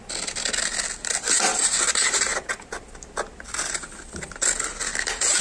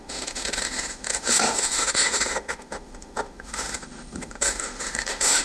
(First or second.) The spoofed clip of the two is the second